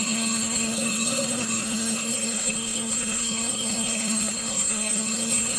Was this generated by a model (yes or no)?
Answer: yes